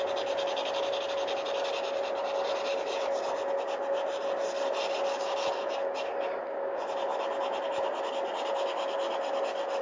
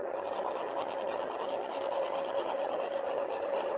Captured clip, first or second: first